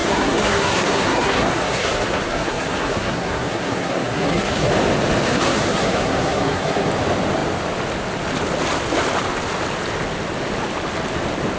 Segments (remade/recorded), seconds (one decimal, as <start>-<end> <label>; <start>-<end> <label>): 0.0-4.7 remade; 4.7-5.3 recorded; 5.3-6.9 remade; 6.9-11.6 recorded